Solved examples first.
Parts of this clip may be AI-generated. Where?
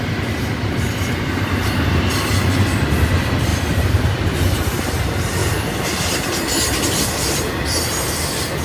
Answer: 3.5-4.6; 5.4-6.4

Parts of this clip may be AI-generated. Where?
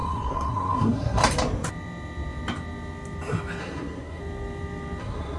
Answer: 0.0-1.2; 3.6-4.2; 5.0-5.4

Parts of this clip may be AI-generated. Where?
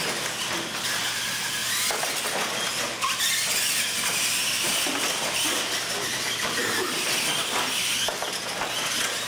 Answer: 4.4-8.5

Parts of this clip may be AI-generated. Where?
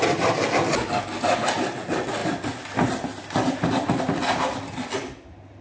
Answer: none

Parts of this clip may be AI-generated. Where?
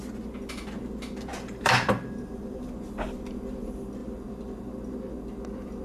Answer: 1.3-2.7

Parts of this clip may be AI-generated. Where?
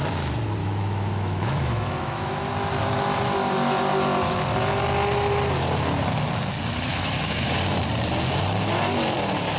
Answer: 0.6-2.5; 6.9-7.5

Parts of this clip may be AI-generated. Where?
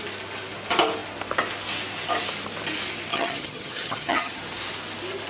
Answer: 3.1-4.4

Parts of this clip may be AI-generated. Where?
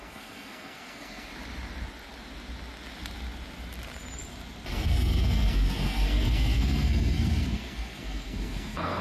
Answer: 0.0-1.3; 4.7-9.0